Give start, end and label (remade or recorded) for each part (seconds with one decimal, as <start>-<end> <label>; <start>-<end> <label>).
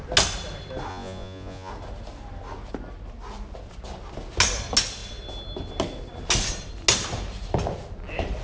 0.0-0.9 recorded; 0.9-1.7 remade; 1.7-8.4 recorded